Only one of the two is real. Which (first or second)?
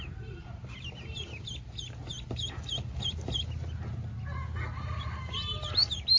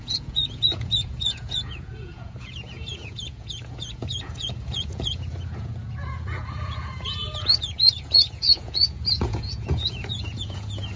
first